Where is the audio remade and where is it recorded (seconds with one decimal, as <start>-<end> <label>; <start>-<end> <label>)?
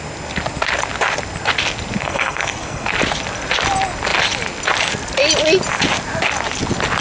0.0-2.0 recorded; 2.0-2.9 remade; 2.9-7.0 recorded